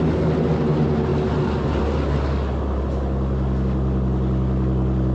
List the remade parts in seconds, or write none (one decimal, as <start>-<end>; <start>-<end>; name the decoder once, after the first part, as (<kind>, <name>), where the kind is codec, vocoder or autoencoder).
none